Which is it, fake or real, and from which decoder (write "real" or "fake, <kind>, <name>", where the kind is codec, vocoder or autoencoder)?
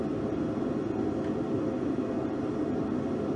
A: real